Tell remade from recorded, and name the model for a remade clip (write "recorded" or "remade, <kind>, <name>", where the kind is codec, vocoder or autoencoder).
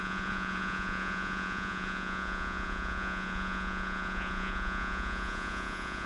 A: remade, vocoder, Vocos